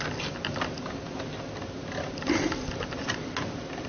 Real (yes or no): yes